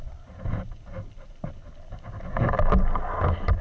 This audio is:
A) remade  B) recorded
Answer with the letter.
B